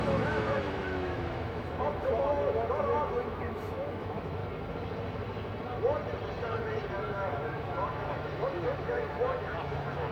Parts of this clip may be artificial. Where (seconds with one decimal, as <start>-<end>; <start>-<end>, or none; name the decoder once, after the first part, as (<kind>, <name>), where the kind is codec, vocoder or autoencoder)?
0.0-4.4 (autoencoder, DAC-VAE); 7.0-10.1